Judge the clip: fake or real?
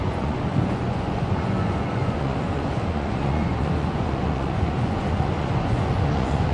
fake